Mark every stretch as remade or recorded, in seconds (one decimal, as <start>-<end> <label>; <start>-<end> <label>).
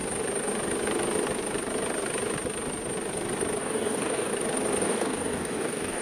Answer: 0.0-3.6 recorded; 3.6-4.3 remade; 4.3-4.8 recorded; 4.8-6.0 remade